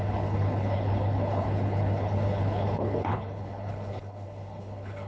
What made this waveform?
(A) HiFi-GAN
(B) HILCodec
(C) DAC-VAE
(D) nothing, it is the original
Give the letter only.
B